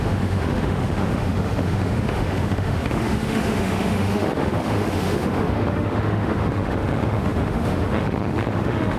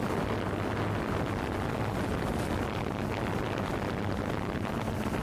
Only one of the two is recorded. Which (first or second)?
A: second